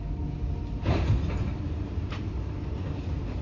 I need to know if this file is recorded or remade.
recorded